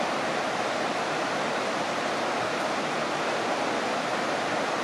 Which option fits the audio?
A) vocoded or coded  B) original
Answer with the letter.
B